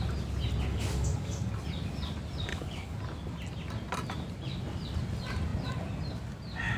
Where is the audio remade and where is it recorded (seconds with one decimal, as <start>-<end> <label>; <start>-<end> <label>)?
0.0-0.7 recorded; 0.7-1.5 remade; 1.5-2.5 recorded; 2.5-3.0 remade; 3.0-6.8 recorded